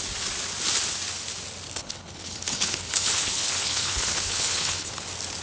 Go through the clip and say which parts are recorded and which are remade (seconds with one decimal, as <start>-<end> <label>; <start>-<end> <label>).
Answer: 0.0-1.7 recorded; 1.7-4.9 remade; 4.9-5.4 recorded